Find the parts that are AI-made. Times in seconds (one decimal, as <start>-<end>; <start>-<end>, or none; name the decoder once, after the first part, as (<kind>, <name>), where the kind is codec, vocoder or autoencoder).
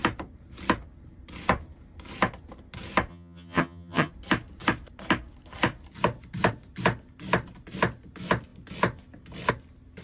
3.1-4.1 (vocoder, HiFi-GAN)